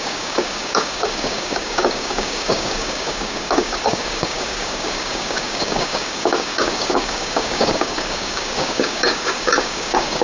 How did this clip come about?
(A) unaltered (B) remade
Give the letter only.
B